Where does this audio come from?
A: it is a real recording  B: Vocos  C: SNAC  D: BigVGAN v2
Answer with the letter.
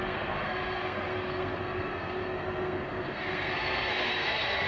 C